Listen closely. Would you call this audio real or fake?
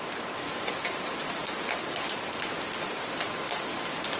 real